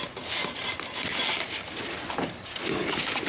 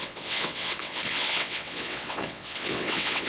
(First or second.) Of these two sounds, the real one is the first